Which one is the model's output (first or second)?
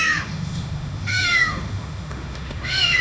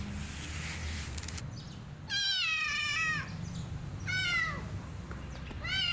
first